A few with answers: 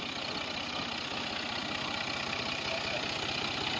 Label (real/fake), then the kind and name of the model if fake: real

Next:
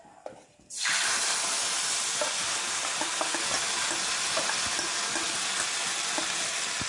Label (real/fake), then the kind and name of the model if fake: real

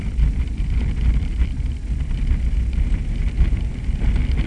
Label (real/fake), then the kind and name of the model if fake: real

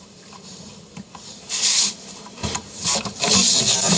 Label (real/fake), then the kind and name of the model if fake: fake, vocoder, BigVGAN v2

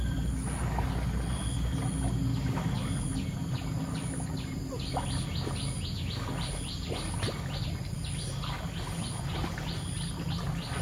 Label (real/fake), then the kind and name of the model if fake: real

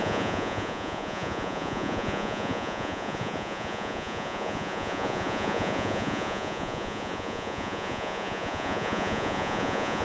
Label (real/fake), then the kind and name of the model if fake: fake, vocoder, Vocos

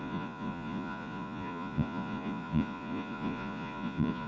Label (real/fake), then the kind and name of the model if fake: fake, vocoder, Vocos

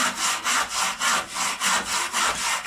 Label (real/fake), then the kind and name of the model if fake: real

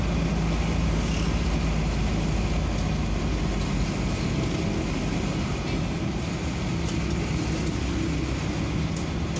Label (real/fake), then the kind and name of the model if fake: real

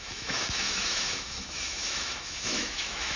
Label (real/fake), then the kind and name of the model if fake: fake, autoencoder, DAC-VAE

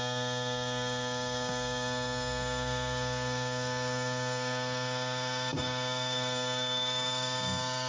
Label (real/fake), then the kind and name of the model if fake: fake, codec, DAC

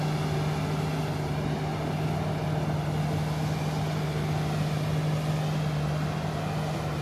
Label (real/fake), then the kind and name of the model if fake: real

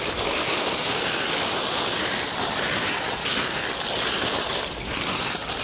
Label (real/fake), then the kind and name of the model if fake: real